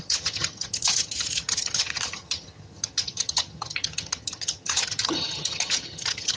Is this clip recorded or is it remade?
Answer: remade